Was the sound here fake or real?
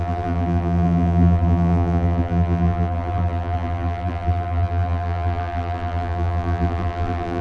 fake